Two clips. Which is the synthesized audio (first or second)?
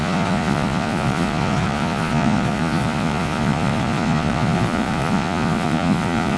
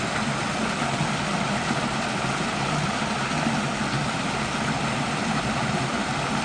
first